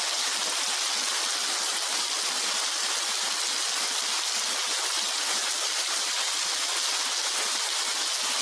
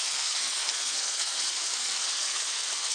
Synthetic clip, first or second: second